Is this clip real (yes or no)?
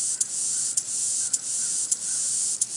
no